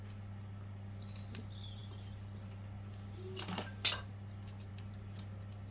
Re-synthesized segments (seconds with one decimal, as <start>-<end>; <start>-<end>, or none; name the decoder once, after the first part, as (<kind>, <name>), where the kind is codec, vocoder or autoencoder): none